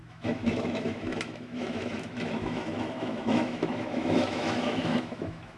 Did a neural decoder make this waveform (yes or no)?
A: yes